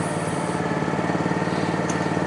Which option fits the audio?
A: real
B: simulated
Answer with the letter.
A